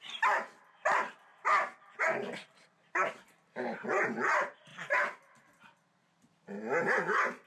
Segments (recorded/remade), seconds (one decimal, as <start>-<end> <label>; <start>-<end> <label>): 0.0-7.5 recorded